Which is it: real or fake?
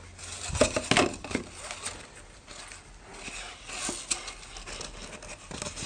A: real